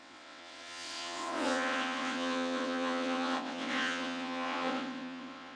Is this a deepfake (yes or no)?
yes